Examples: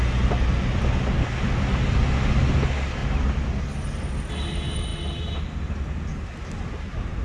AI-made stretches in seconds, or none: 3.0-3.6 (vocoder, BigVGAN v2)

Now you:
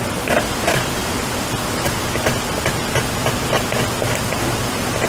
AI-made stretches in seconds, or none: none

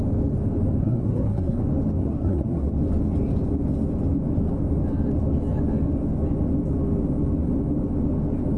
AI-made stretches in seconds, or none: 0.8-1.6 (codec, SNAC); 2.0-2.7

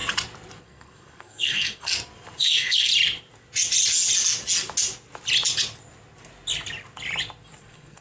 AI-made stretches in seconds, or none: 0.6-1.9 (codec, SNAC); 2.4-2.9; 7.6-8.0

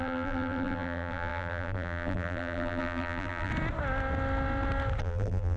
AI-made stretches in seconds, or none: 0.0-3.5 (vocoder, BigVGAN v2); 5.0-5.6